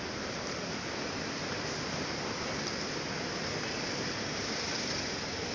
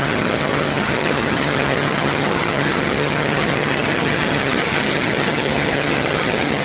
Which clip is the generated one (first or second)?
second